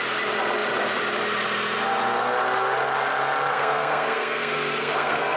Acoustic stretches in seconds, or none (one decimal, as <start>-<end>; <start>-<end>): 0.0-3.5